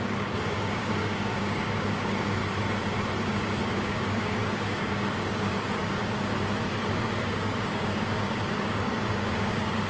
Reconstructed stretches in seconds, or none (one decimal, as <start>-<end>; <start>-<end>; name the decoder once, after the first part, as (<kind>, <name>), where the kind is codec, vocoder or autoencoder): 0.0-2.4 (codec, DAC); 3.3-6.3; 6.9-9.9